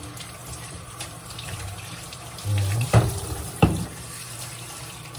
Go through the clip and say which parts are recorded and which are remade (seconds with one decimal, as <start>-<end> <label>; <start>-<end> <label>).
0.0-0.4 recorded; 0.4-3.5 remade; 3.5-5.2 recorded